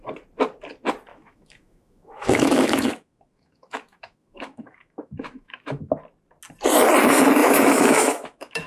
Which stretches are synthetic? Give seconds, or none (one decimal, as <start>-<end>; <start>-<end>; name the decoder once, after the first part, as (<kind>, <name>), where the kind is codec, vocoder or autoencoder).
1.1-6.0 (autoencoder, DAC-VAE); 7.4-8.7